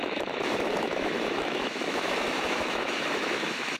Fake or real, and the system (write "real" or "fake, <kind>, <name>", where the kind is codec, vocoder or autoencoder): fake, autoencoder, DAC-VAE